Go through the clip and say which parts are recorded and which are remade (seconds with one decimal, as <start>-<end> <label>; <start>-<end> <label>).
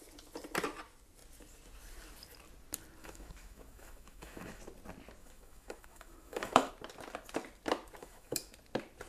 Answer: 0.0-3.0 recorded; 3.0-4.6 remade; 4.6-5.2 recorded; 5.2-6.7 remade; 6.7-8.0 recorded; 8.0-8.5 remade; 8.5-9.1 recorded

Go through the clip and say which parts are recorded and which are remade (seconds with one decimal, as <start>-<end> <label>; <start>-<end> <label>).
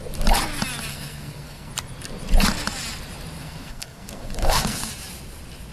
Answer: 0.0-0.9 recorded; 0.9-1.7 remade; 1.7-3.4 recorded; 3.4-4.9 remade; 4.9-5.7 recorded